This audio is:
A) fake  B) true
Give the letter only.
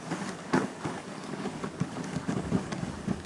A